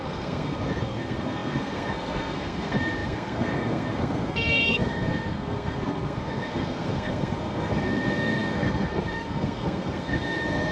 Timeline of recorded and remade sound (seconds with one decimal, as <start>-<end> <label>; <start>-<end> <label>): 0.0-10.7 remade